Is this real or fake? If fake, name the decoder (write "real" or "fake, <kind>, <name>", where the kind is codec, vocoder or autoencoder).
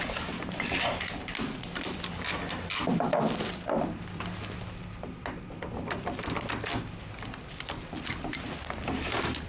fake, vocoder, BigVGAN v2